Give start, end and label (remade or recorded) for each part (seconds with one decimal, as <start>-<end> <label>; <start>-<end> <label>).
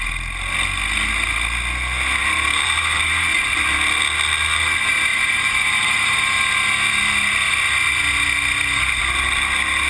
0.0-2.2 recorded; 2.2-3.4 remade; 3.4-5.1 recorded; 5.1-6.6 remade; 6.6-9.9 recorded